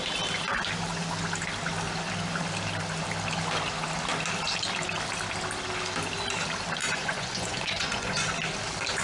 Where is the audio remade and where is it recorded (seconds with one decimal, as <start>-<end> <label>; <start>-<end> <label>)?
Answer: 0.0-6.8 recorded; 6.8-8.3 remade; 8.3-9.0 recorded